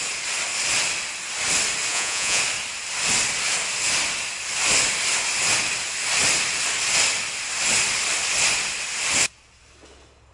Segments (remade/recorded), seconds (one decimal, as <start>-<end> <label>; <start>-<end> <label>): 0.0-1.9 recorded; 1.9-2.4 remade; 2.4-10.3 recorded